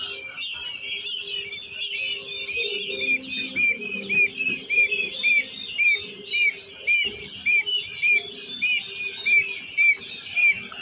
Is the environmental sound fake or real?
real